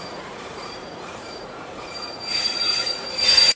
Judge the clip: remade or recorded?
remade